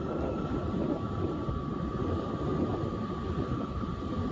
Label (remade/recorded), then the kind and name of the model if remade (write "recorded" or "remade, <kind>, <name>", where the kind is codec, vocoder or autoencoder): recorded